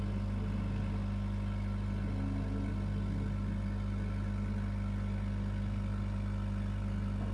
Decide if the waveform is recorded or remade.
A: recorded